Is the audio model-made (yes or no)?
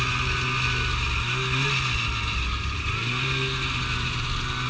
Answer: no